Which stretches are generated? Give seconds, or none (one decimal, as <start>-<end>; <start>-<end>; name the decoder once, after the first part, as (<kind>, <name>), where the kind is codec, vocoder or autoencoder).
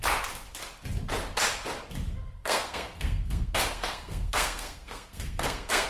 2.4-5.9 (codec, SNAC)